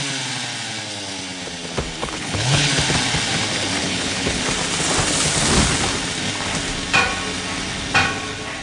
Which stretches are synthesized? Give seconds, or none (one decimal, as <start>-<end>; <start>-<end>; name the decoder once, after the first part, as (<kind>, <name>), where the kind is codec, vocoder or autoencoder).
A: 2.0-2.7 (codec, HILCodec); 3.8-4.4